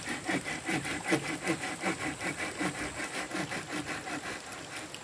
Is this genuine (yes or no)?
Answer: yes